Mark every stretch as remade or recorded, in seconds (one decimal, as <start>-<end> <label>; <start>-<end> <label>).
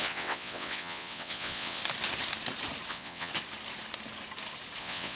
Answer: 0.0-1.8 remade; 1.8-2.9 recorded; 2.9-3.3 remade; 3.3-4.8 recorded; 4.8-5.2 remade